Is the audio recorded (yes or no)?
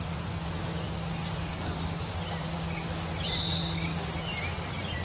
yes